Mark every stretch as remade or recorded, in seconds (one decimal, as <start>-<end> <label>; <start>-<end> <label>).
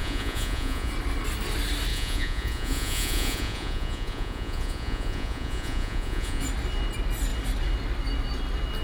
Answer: 0.0-0.9 remade; 0.9-1.9 recorded; 1.9-6.4 remade; 6.4-8.8 recorded